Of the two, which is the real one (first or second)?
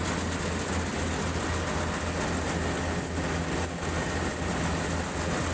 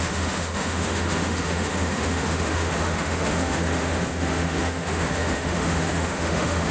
first